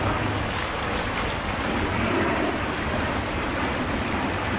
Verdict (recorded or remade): recorded